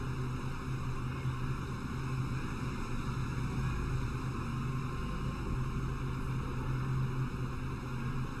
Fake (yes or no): no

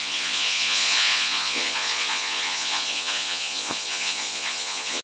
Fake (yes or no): yes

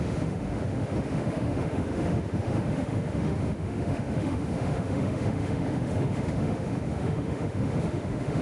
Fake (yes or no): yes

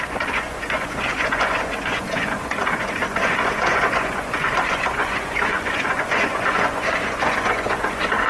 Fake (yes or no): yes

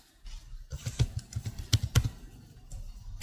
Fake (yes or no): no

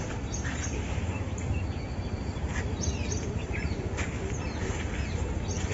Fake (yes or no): no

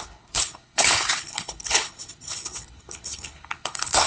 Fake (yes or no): yes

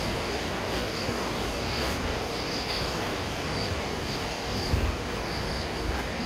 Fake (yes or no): yes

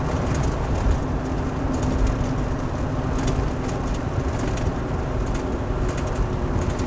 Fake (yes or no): no